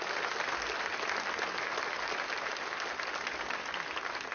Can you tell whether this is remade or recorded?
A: recorded